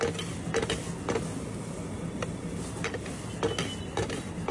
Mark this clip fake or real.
real